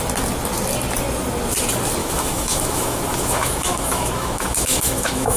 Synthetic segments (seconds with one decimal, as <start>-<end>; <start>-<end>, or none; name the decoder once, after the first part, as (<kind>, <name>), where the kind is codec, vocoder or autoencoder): 2.0-5.4 (autoencoder, DAC-VAE)